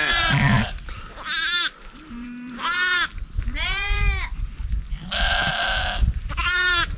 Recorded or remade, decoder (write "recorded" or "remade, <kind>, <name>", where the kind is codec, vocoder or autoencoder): remade, vocoder, BigVGAN v2